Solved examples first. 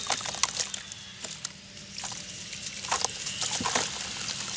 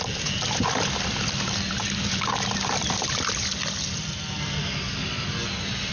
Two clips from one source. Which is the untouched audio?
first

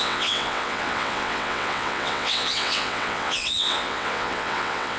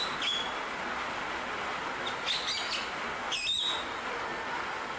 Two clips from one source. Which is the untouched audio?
second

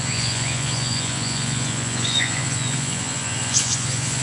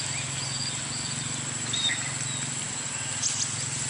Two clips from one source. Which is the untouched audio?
second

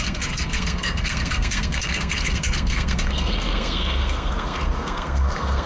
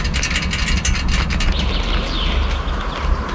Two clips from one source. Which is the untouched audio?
second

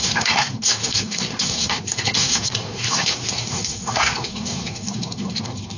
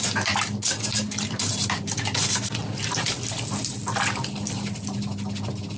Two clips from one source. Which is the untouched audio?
second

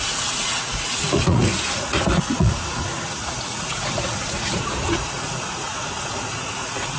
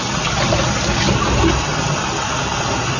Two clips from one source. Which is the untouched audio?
second